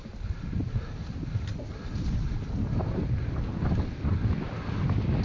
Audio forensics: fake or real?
real